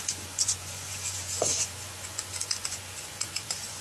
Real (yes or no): no